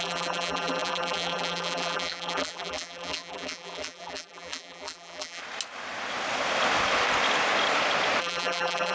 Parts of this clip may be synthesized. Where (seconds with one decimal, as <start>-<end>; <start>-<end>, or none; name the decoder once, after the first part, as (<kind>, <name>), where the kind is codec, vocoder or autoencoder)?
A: 0.0-5.4 (vocoder, BigVGAN v2); 8.2-8.9